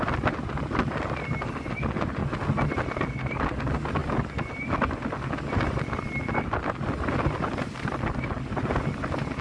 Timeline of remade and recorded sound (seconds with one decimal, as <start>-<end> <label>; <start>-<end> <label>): 0.0-9.4 recorded